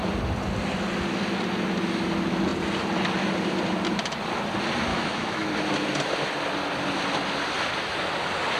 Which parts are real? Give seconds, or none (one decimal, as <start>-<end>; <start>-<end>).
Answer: 0.0-4.9; 5.5-8.6